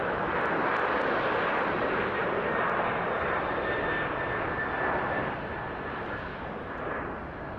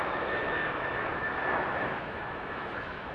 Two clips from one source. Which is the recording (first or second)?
first